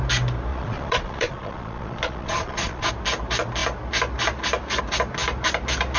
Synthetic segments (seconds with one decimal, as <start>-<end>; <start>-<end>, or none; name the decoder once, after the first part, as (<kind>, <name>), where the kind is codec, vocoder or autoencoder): 0.5-2.9 (vocoder, Vocos)